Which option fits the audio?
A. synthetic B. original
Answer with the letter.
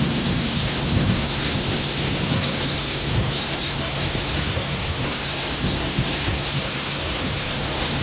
A